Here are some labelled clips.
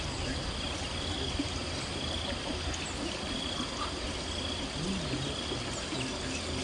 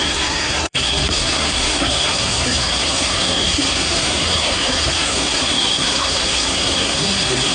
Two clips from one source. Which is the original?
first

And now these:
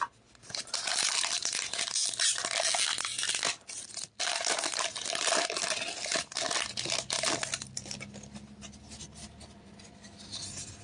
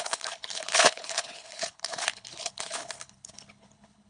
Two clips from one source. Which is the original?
first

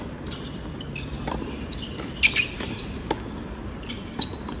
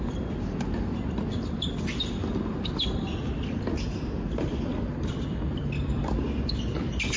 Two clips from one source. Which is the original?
second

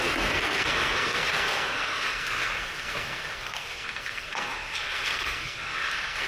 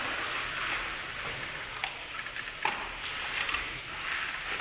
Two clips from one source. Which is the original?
second